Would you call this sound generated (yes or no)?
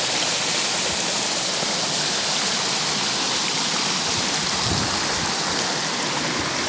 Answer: no